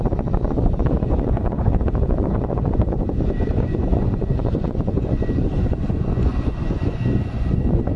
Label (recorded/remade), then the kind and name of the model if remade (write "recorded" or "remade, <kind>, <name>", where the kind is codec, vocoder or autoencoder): remade, vocoder, Vocos